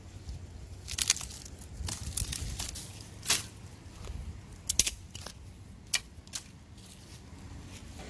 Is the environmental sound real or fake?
real